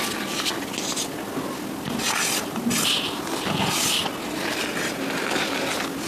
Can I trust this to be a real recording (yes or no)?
yes